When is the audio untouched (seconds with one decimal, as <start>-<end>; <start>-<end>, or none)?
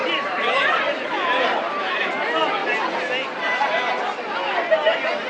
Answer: 1.0-5.3